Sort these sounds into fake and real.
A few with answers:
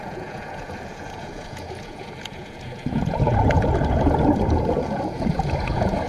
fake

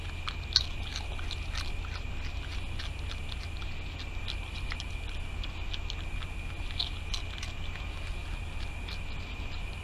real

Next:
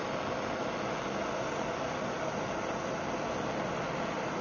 real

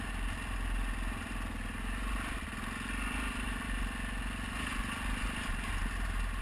real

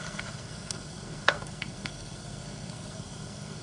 fake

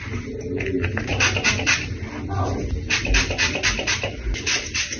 real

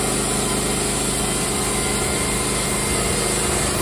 real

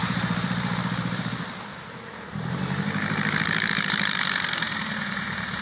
fake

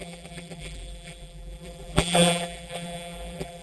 fake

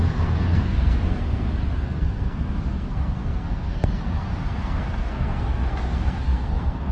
fake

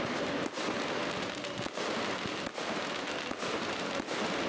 real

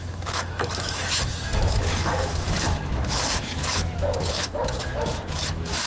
fake